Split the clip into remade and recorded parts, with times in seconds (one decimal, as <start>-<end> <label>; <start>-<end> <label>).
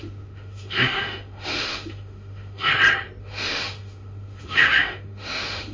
0.0-2.7 remade; 2.7-3.2 recorded; 3.2-5.7 remade